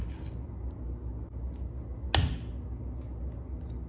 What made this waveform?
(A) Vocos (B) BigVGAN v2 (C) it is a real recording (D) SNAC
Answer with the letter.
C